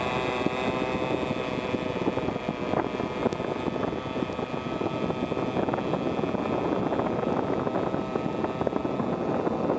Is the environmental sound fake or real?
real